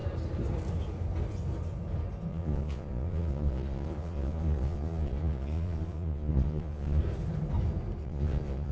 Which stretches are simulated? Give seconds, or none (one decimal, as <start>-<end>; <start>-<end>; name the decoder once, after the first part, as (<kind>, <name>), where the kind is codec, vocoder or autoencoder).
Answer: 2.3-7.0 (vocoder, Vocos); 8.0-8.7